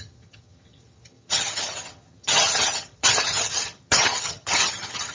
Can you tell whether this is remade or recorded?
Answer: remade